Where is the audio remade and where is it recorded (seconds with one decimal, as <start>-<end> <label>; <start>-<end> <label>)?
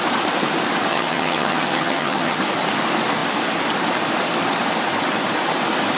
0.0-0.9 recorded; 0.9-2.4 remade; 2.4-6.0 recorded